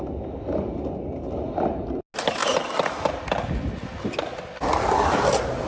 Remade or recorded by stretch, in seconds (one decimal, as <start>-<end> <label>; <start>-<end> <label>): 0.0-5.7 recorded